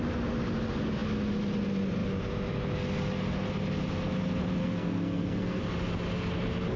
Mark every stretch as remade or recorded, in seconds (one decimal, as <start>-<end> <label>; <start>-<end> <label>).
0.0-4.6 recorded; 4.6-5.6 remade; 5.6-6.8 recorded